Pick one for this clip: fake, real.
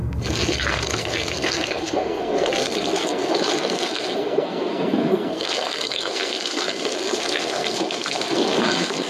fake